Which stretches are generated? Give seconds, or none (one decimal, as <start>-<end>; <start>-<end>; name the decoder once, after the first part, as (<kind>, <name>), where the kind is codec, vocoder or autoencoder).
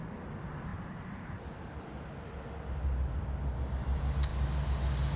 0.7-3.2 (vocoder, BigVGAN v2)